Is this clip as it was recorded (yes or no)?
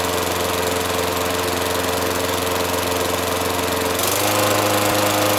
yes